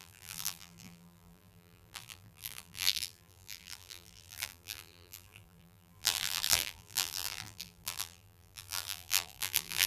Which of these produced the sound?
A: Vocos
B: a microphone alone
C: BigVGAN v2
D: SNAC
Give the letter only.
C